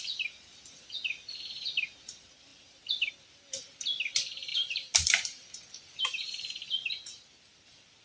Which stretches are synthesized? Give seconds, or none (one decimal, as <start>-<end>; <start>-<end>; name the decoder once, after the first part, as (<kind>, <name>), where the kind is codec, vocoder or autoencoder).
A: 2.5-3.1 (vocoder, BigVGAN v2); 4.5-5.5